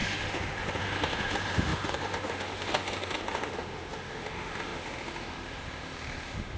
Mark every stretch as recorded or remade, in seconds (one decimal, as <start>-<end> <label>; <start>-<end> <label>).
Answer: 0.0-6.6 remade